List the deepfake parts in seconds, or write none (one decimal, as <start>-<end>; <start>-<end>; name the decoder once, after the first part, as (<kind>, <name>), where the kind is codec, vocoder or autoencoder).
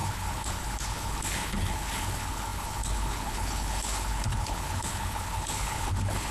0.0-6.3 (codec, HILCodec)